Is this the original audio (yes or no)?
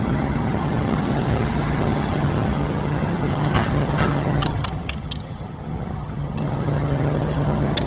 no